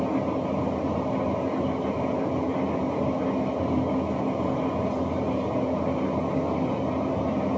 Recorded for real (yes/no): yes